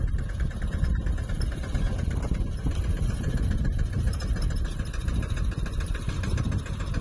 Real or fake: real